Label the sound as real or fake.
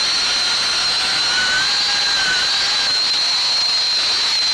real